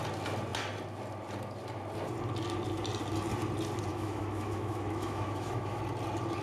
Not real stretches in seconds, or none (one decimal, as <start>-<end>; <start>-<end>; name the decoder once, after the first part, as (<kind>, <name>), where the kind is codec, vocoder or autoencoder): 3.9-5.8 (autoencoder, DAC-VAE)